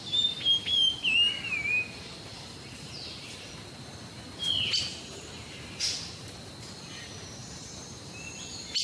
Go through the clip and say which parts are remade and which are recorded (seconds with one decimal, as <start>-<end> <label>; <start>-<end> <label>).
0.0-2.3 recorded; 2.3-3.5 remade; 3.5-7.4 recorded; 7.4-8.2 remade; 8.2-8.8 recorded